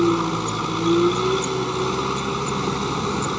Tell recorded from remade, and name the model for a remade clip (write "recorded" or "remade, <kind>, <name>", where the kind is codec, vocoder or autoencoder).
recorded